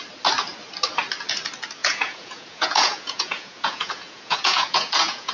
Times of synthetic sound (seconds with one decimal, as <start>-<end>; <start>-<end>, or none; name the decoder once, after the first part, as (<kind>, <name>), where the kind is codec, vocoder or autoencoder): 1.8-5.3 (vocoder, Vocos)